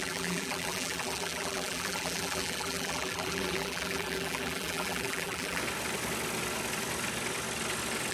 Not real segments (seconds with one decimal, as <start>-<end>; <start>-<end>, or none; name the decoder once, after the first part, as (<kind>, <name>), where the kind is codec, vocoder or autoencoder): 0.0-5.6 (vocoder, BigVGAN v2)